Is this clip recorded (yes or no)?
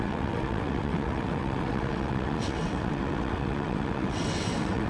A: no